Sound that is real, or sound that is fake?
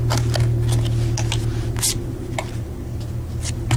real